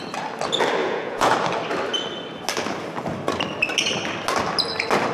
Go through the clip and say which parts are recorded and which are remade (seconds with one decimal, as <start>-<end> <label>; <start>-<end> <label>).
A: 0.0-0.8 recorded; 0.8-1.3 remade; 1.3-5.1 recorded